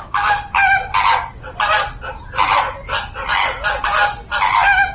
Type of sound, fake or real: real